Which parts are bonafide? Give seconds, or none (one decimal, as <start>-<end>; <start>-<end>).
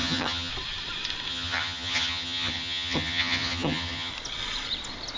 0.5-1.3; 4.1-5.2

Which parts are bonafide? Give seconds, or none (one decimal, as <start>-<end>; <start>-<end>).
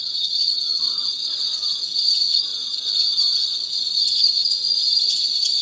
none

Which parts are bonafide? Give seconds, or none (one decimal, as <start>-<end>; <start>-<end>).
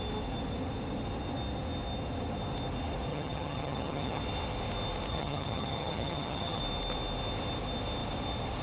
0.0-3.1; 4.2-5.1; 6.6-8.6